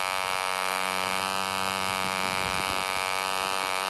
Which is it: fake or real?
real